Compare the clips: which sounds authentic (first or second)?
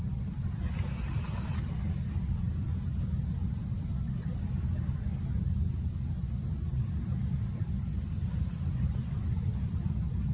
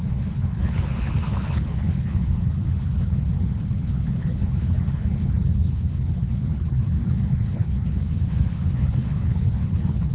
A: first